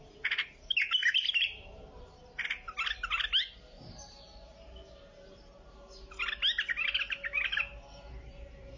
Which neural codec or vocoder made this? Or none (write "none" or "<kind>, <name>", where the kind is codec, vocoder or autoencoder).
none